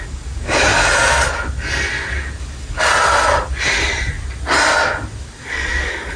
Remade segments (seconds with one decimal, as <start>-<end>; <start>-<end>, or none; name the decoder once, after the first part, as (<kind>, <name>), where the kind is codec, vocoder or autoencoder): 0.0-0.7 (codec, DAC); 2.4-2.9; 5.2-6.2